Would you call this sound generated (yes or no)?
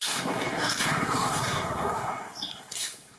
yes